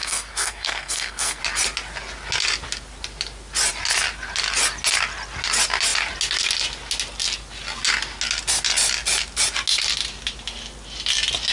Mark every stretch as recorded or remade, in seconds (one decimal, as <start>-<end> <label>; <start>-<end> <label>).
0.0-1.4 remade; 1.4-11.5 recorded